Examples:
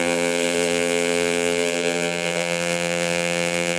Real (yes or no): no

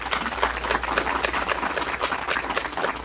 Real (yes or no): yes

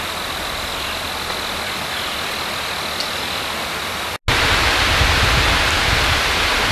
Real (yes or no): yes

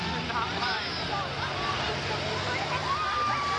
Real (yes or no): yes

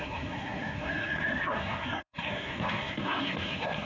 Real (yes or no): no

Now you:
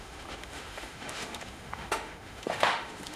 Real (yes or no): no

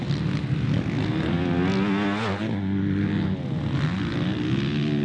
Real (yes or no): yes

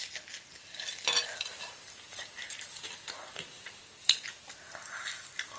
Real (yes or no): yes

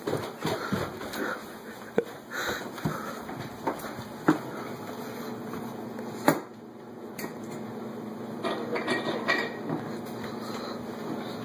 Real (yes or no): yes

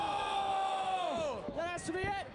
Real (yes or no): no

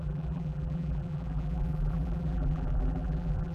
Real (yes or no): no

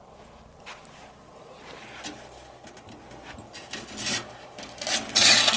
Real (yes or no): yes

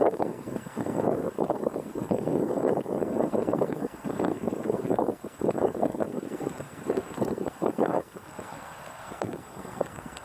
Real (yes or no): no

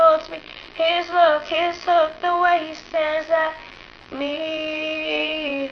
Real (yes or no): no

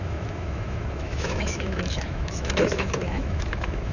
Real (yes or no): no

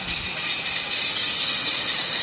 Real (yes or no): yes